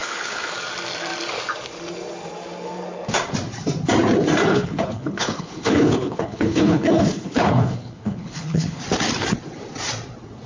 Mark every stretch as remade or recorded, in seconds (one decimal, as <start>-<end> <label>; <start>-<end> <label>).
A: 0.0-0.5 remade; 0.5-4.5 recorded; 4.5-8.8 remade; 8.8-10.5 recorded